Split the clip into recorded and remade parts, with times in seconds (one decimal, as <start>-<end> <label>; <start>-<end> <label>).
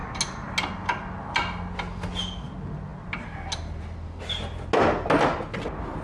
0.0-6.0 recorded